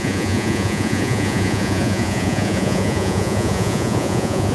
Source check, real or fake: fake